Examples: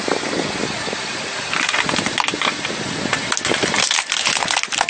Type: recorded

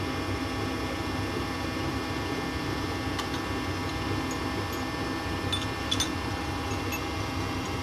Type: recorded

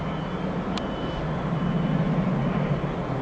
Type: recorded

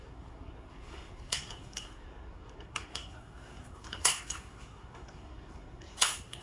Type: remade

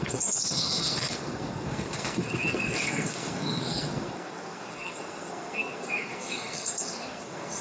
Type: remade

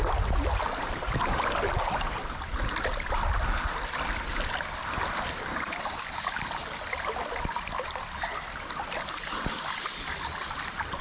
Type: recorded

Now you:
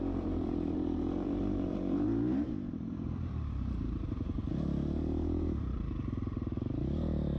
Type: remade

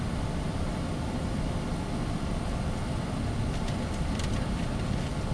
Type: remade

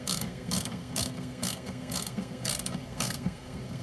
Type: remade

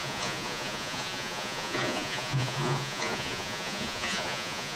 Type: remade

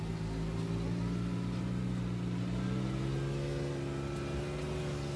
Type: recorded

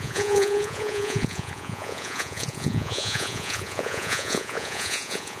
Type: remade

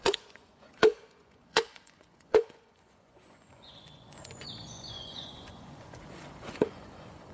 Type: remade